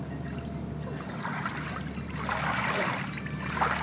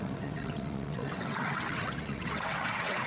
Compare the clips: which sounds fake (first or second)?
second